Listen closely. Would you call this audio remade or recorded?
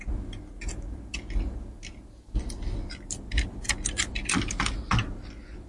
recorded